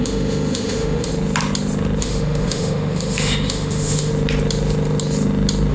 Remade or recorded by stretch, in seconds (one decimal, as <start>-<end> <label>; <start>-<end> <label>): 0.0-1.1 remade; 1.1-2.0 recorded; 2.0-4.1 remade; 4.1-5.7 recorded